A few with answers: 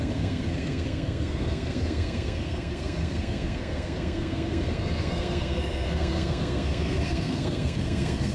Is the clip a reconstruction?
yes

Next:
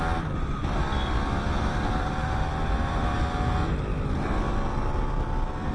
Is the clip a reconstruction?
no